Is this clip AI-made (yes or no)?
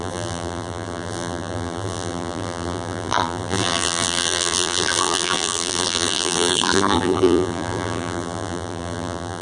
yes